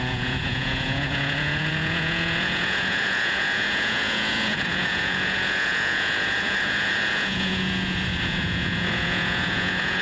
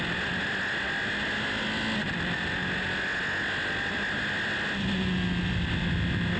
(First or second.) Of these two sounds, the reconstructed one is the first